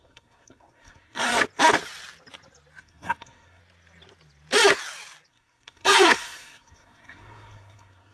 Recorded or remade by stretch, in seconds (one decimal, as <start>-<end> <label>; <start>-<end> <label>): 0.0-1.3 remade; 1.3-2.8 recorded; 2.8-3.6 remade; 3.6-5.3 recorded; 5.3-8.1 remade